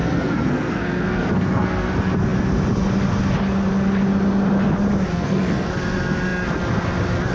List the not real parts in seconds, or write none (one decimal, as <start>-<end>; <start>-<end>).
0.0-1.9; 5.1-5.7